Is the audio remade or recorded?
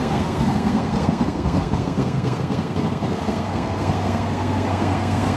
remade